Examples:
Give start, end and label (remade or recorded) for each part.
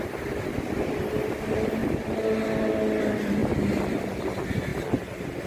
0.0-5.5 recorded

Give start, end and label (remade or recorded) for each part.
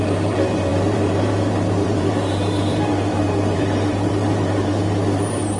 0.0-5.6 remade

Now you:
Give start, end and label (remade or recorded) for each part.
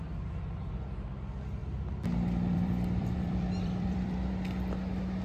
0.0-1.6 recorded; 1.6-4.3 remade; 4.3-5.2 recorded